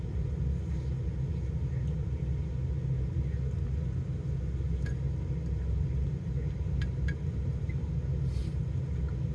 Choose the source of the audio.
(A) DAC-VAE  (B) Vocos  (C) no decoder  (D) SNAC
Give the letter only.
C